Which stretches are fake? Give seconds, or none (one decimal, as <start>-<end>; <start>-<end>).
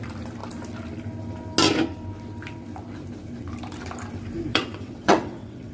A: 4.5-5.7